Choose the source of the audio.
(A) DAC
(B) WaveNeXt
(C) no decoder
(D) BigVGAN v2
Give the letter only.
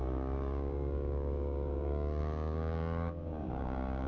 A